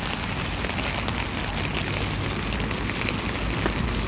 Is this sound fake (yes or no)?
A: no